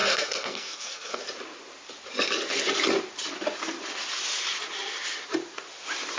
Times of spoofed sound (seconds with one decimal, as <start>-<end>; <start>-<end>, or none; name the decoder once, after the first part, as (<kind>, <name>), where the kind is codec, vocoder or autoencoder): 0.0-1.2 (codec, SNAC)